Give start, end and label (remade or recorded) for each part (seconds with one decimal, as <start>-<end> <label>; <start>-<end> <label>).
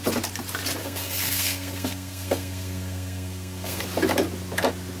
0.0-0.8 recorded; 0.8-3.8 remade; 3.8-5.0 recorded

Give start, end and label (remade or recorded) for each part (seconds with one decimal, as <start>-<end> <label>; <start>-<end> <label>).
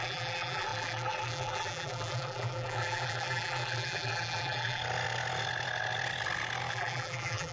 0.0-4.8 remade; 4.8-6.7 recorded; 6.7-7.5 remade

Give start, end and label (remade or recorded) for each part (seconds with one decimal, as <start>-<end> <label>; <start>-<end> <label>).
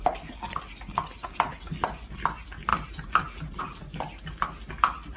0.0-5.2 recorded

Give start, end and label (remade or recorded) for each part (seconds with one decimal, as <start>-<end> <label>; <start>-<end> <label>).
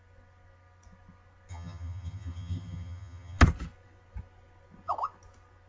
0.0-1.5 recorded; 1.5-3.4 remade; 3.4-5.7 recorded